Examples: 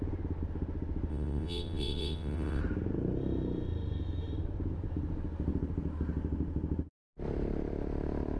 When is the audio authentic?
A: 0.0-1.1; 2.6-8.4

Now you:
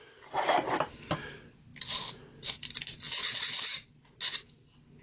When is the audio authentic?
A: 0.0-5.0

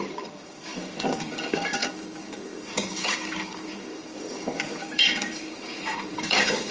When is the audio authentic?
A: none

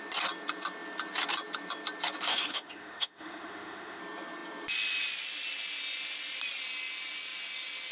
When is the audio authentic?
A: 0.0-2.3; 4.0-7.9

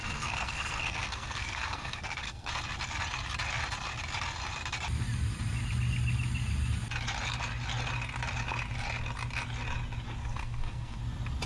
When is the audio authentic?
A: 2.5-10.2; 11.0-11.5